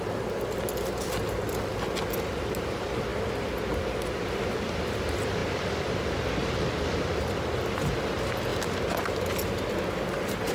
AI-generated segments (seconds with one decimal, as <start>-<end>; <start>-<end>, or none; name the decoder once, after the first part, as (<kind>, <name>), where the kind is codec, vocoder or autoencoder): none